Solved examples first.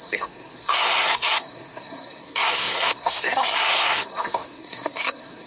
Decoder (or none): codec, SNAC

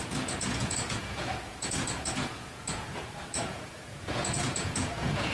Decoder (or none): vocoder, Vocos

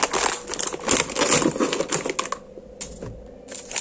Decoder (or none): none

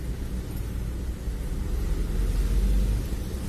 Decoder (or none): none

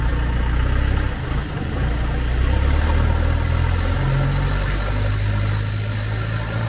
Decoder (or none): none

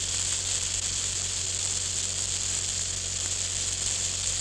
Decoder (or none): none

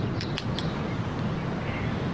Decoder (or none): none